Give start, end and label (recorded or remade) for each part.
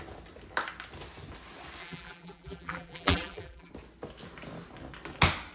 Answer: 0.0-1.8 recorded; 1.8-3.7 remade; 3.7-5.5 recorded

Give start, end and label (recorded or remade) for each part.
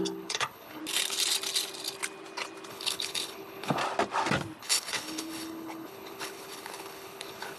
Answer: 0.0-0.8 remade; 0.8-2.7 recorded; 2.7-3.8 remade; 3.8-4.6 recorded; 4.6-7.6 remade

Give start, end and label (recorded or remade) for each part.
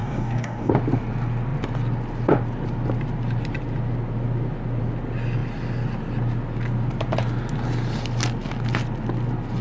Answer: 0.0-0.7 remade; 0.7-9.6 recorded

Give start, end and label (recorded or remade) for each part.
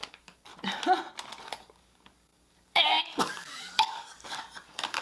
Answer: 0.0-0.5 remade; 0.5-1.4 recorded; 1.4-5.0 remade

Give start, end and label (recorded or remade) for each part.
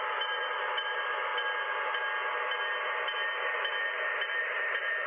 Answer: 0.0-1.3 remade; 1.3-4.4 recorded; 4.4-5.1 remade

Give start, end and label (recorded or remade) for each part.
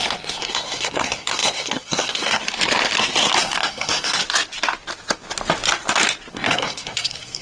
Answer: 0.0-2.4 remade; 2.4-3.4 recorded; 3.4-4.2 remade; 4.2-6.3 recorded; 6.3-7.4 remade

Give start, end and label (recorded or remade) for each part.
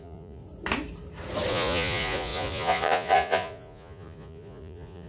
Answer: 0.0-0.4 remade; 0.4-1.5 recorded; 1.5-5.1 remade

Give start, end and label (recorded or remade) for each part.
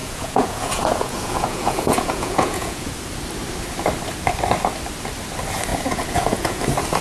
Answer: 0.0-2.9 remade; 2.9-5.7 recorded; 5.7-6.6 remade; 6.6-7.0 recorded